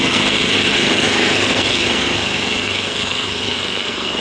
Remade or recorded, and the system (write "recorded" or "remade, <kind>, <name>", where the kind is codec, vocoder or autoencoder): remade, codec, SNAC